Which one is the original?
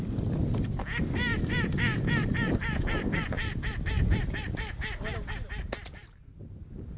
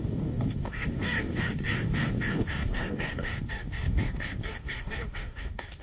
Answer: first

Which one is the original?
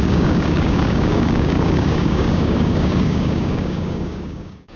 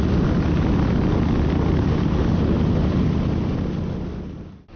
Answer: second